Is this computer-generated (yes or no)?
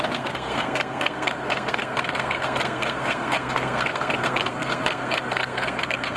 yes